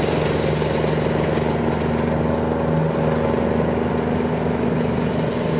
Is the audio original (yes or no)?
yes